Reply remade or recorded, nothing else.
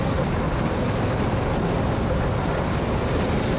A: recorded